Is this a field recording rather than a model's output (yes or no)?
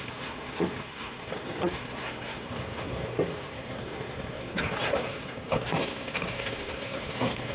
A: no